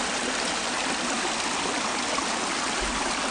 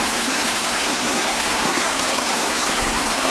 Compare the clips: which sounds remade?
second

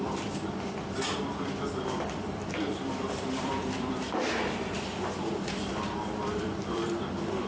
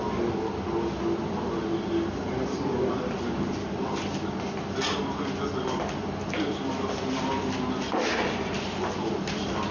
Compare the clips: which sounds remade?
first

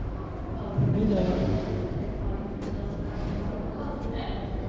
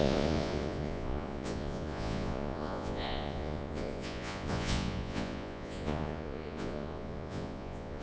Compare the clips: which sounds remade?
second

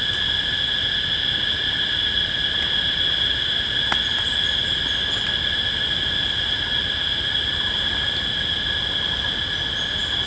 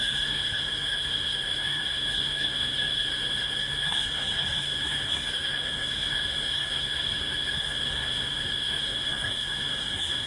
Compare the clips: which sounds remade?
second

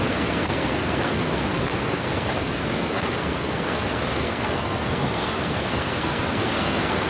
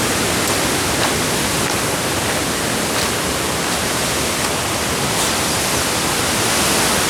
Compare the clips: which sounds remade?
first